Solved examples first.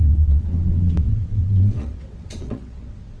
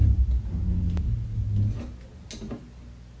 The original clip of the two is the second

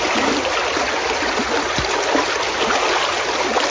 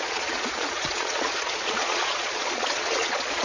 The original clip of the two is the first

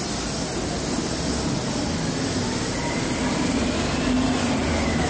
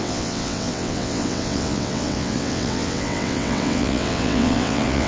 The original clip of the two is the first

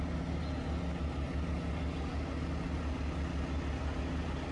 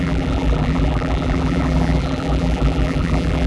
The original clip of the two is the first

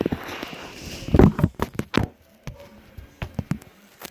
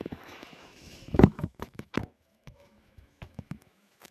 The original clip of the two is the first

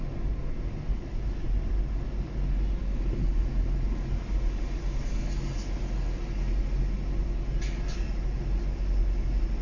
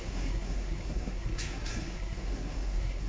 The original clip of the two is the first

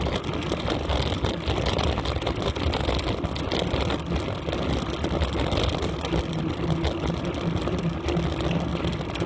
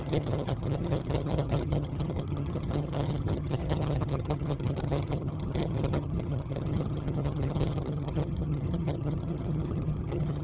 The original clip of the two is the first